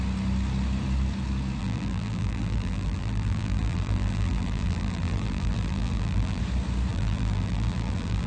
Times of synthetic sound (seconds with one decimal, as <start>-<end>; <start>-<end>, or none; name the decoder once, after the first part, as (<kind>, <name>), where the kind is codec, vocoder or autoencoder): 1.6-6.4 (vocoder, BigVGAN v2); 6.9-8.3